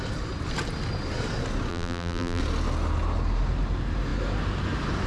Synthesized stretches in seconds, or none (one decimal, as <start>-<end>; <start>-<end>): 1.7-2.4